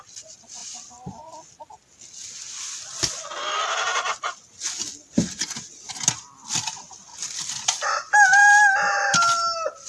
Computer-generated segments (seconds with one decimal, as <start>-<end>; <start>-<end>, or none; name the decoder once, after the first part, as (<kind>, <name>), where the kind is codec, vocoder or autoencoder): none